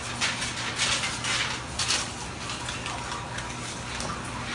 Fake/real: real